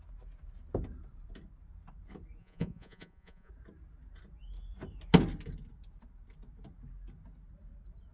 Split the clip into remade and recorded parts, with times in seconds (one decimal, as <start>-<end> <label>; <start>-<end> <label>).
0.0-2.4 recorded; 2.4-3.5 remade; 3.5-8.1 recorded